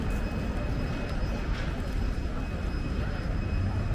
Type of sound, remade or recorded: recorded